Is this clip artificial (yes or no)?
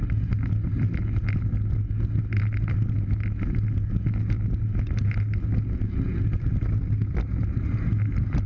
no